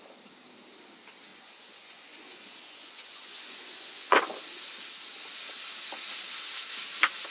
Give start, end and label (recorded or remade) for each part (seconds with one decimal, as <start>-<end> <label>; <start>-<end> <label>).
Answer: 0.0-1.3 recorded; 1.3-4.4 remade; 4.4-7.3 recorded